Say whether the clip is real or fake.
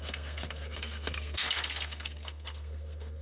fake